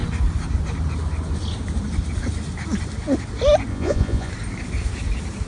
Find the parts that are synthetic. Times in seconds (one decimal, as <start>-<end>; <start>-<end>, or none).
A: 3.7-4.3